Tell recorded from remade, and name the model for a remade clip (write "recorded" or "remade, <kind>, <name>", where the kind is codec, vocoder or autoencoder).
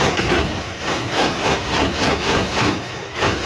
remade, codec, SNAC